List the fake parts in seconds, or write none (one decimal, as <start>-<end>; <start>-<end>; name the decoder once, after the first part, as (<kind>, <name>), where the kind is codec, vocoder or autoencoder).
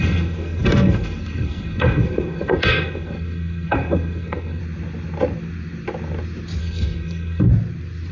0.0-4.6 (codec, SNAC); 6.6-7.5